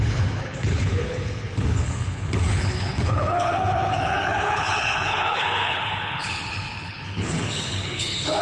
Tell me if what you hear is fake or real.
fake